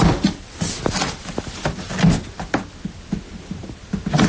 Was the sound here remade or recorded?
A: recorded